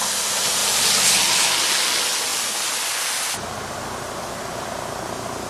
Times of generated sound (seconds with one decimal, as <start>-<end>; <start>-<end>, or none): none